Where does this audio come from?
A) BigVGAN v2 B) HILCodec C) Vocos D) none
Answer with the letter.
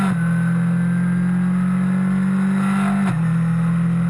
D